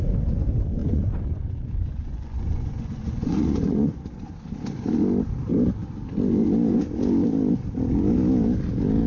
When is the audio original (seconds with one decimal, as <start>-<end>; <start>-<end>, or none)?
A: 0.0-0.8; 4.0-9.1